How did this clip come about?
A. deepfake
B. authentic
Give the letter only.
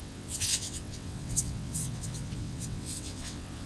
A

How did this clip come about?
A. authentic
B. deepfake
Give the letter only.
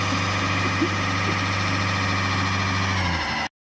A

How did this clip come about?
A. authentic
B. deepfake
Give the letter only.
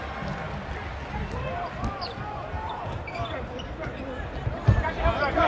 A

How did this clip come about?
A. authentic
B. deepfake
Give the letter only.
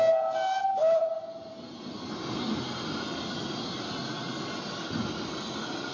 A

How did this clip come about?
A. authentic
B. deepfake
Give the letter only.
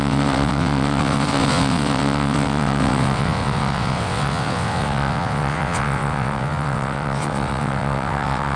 B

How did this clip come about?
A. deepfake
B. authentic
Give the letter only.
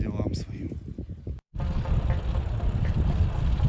B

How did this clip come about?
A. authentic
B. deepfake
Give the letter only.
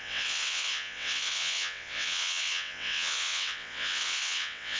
B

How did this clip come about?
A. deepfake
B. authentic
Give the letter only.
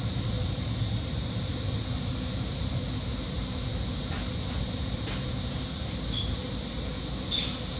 B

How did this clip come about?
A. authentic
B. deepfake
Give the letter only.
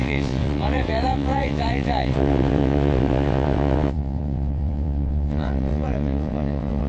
B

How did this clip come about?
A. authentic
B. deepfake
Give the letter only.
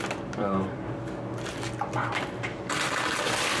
A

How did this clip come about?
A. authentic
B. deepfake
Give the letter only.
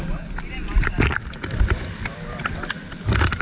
A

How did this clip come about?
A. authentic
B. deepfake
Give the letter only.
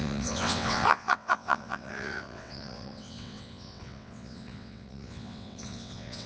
B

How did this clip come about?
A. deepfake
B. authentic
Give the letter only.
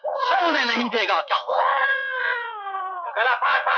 A